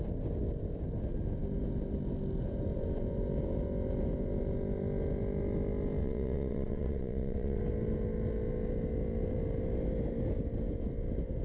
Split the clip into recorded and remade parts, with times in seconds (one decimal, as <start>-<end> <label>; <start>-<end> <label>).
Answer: 0.0-6.0 recorded; 6.0-7.6 remade; 7.6-11.4 recorded